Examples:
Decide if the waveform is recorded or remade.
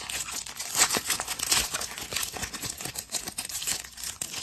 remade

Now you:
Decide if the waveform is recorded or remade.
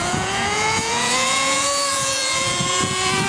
remade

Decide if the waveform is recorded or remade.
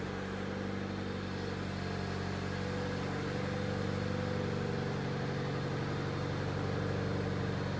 recorded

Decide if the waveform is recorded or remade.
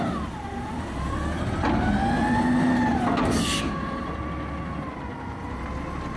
recorded